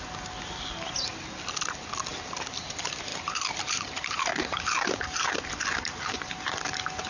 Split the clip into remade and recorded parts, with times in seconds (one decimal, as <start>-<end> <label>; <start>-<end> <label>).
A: 0.0-3.1 recorded; 3.1-5.4 remade; 5.4-7.1 recorded

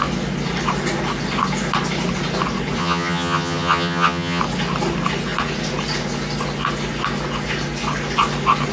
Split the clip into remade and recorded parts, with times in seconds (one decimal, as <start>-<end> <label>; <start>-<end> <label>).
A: 0.0-2.8 recorded; 2.8-4.4 remade; 4.4-8.7 recorded

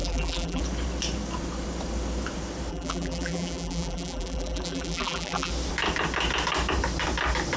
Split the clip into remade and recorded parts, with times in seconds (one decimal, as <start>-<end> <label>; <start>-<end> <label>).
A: 0.0-0.6 remade; 0.6-2.7 recorded; 2.7-5.5 remade; 5.5-7.6 recorded

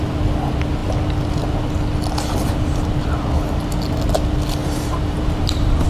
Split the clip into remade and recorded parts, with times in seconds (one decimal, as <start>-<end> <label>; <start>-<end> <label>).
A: 0.0-4.6 recorded; 4.6-5.9 remade

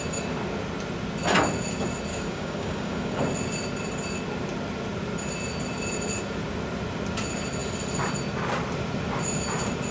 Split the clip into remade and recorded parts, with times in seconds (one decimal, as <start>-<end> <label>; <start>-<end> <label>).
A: 0.0-2.1 recorded; 2.1-3.2 remade; 3.2-9.9 recorded

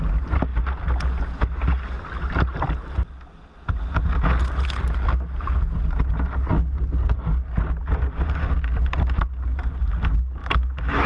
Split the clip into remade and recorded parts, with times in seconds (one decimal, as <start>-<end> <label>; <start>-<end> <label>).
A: 0.0-10.4 recorded; 10.4-11.1 remade

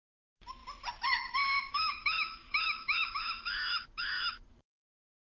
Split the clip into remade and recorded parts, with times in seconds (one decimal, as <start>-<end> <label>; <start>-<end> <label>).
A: 0.0-0.6 remade; 0.6-1.7 recorded; 1.7-5.3 remade